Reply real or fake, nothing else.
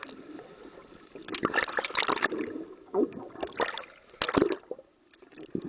real